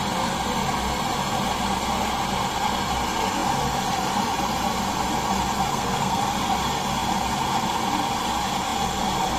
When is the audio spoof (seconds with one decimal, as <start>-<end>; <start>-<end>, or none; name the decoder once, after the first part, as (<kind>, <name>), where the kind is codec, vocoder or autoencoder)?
5.7-6.2 (codec, SNAC)